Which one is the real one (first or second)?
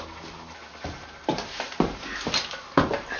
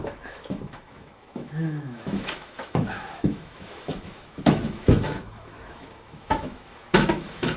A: first